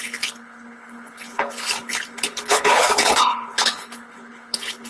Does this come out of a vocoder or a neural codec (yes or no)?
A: yes